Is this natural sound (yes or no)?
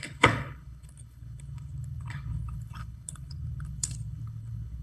no